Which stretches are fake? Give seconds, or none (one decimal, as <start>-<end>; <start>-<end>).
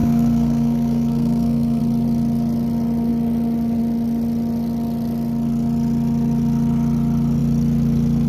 0.0-1.8